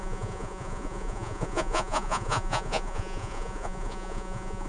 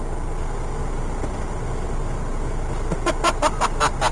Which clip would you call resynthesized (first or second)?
first